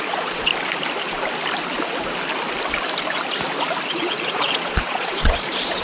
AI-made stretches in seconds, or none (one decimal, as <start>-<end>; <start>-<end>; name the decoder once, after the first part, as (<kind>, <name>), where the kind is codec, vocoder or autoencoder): 0.0-0.5 (vocoder, Vocos); 4.0-5.8